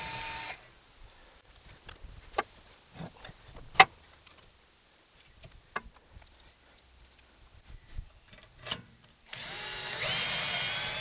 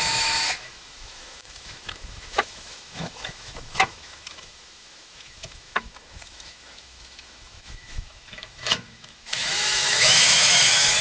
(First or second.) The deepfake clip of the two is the second